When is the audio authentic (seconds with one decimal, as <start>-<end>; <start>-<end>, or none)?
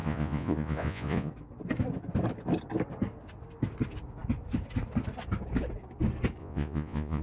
1.3-6.4